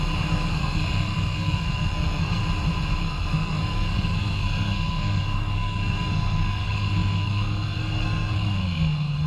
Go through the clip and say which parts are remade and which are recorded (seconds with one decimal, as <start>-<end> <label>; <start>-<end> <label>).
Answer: 0.0-2.4 remade; 2.4-3.0 recorded; 3.0-9.3 remade